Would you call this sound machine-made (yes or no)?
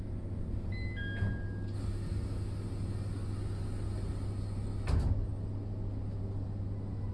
no